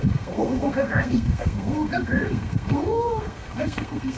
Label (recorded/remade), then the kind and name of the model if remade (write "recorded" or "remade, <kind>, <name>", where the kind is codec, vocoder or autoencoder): remade, codec, SNAC